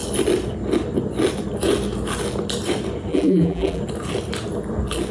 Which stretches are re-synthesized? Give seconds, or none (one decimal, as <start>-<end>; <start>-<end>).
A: 3.1-3.8